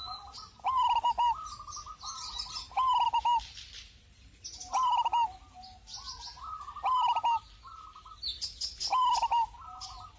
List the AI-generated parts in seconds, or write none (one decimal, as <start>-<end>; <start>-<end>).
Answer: none